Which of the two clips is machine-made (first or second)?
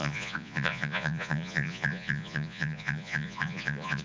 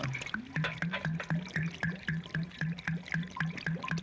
first